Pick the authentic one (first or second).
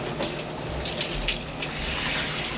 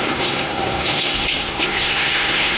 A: first